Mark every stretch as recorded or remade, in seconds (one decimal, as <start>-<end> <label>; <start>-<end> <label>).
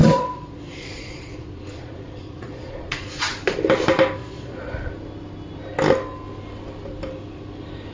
0.0-3.3 remade; 3.3-4.2 recorded; 4.2-4.9 remade; 4.9-7.9 recorded